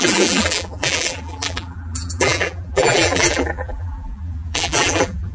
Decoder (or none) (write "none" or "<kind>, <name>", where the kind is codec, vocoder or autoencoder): vocoder, BigVGAN v2